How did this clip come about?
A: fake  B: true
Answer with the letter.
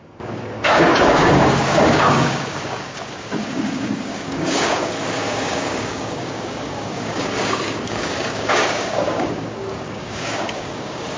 A